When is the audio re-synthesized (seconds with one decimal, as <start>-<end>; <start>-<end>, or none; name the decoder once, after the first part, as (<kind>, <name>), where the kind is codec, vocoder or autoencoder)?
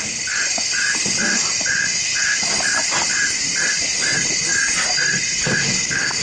none